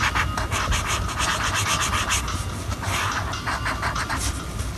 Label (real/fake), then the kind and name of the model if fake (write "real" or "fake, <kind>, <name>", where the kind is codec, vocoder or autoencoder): real